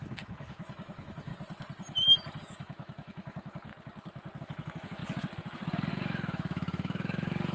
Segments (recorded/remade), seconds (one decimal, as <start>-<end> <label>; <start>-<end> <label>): 0.0-1.3 remade; 1.3-2.4 recorded; 2.4-3.7 remade; 3.7-4.4 recorded; 4.4-5.0 remade; 5.0-5.9 recorded; 5.9-7.5 remade